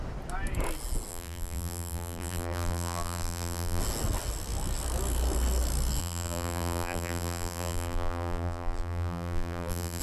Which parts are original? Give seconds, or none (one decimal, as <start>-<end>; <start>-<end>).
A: 0.0-1.1; 3.8-6.0